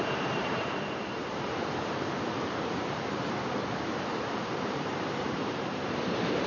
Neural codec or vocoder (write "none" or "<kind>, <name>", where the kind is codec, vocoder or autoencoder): vocoder, BigVGAN v2